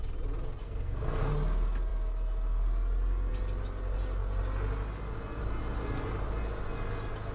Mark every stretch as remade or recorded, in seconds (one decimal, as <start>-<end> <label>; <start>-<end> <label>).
0.0-0.6 recorded; 0.6-1.3 remade; 1.3-7.3 recorded